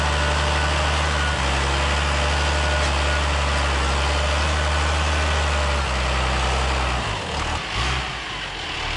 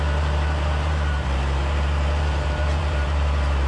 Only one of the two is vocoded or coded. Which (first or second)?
second